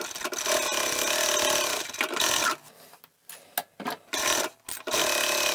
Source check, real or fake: real